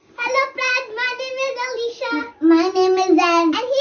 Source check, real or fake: real